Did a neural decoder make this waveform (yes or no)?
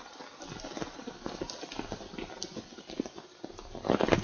no